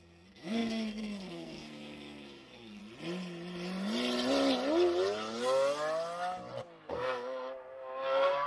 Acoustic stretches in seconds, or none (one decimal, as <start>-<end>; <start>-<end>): 2.8-6.9